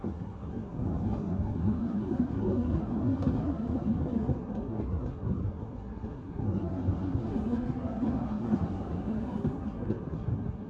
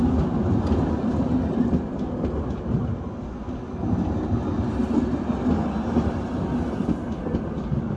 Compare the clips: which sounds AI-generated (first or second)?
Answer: first